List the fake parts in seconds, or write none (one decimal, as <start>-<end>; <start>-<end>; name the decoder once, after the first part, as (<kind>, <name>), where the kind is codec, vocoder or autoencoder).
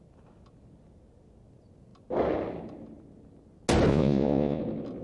3.9-4.6 (vocoder, Vocos)